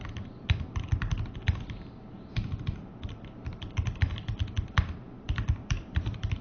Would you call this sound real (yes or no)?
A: yes